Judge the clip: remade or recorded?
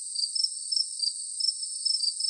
recorded